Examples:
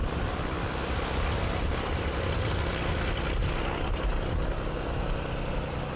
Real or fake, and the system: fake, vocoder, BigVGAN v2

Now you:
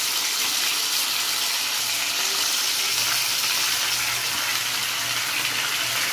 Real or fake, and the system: real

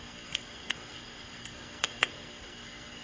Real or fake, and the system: fake, codec, SNAC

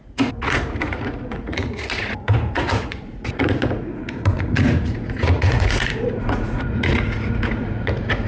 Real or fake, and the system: fake, vocoder, Vocos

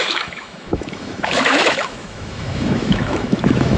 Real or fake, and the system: fake, autoencoder, DAC-VAE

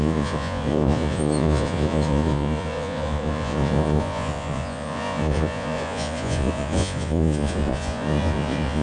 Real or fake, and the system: fake, vocoder, Vocos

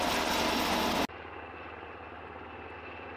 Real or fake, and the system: real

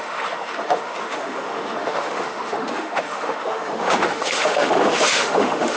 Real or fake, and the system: fake, autoencoder, DAC-VAE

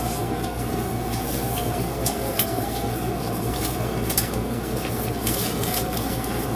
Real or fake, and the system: fake, codec, SNAC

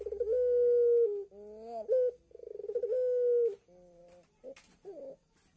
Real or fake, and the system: real